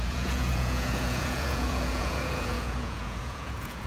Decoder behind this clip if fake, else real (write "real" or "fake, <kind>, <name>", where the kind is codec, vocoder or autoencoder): fake, vocoder, Vocos